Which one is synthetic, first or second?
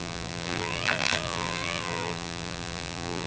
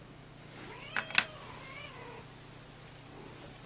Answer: first